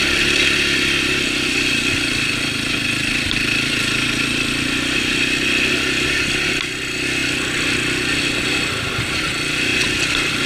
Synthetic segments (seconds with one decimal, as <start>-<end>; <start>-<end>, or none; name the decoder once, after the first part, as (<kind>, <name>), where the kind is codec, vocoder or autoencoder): 9.7-10.5 (vocoder, BigVGAN v2)